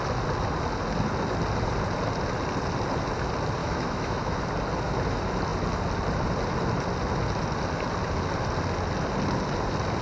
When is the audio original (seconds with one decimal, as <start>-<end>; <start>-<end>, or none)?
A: 0.0-3.6; 4.4-10.0